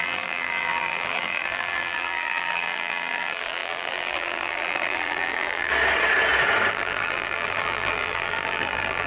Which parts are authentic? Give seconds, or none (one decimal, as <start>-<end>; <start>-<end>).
5.7-6.7